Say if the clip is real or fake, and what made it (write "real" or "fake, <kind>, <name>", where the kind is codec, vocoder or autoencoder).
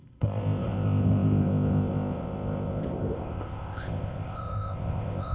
fake, codec, ZipCodec